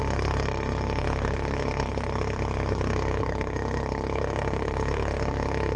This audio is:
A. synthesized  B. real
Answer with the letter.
A